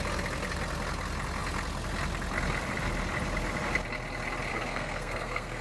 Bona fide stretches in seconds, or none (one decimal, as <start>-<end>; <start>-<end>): 0.0-4.5